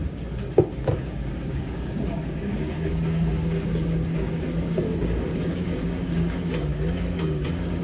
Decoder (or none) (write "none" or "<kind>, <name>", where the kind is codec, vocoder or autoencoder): codec, DAC